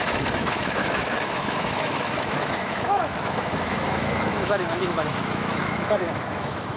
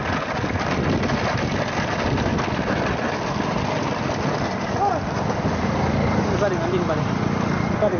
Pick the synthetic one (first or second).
first